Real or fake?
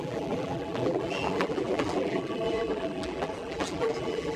fake